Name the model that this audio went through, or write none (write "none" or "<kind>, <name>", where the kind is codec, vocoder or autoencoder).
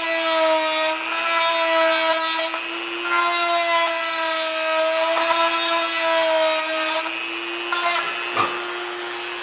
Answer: none